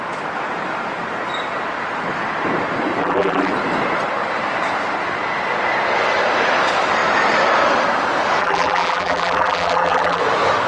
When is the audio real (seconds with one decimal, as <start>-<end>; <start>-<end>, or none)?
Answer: 0.0-3.0; 3.5-8.4; 10.2-10.7